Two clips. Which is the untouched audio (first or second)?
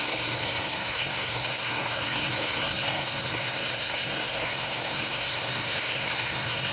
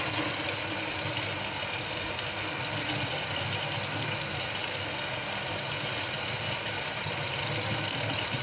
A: second